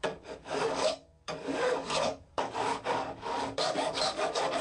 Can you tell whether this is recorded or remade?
remade